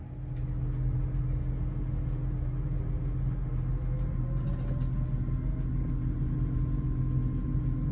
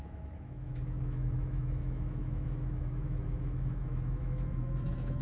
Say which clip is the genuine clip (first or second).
first